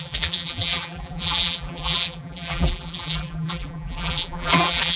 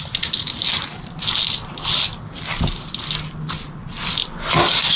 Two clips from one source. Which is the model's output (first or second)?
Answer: first